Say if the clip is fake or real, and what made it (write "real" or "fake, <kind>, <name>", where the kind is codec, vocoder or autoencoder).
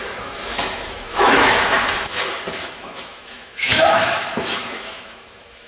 fake, autoencoder, DAC-VAE